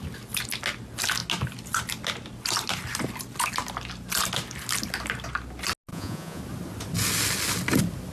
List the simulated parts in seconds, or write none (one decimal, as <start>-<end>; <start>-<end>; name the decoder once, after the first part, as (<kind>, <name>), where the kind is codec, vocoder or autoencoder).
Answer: 5.9-6.4 (vocoder, Vocos)